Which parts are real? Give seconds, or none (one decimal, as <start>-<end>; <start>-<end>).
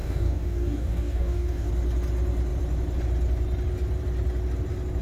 1.7-5.0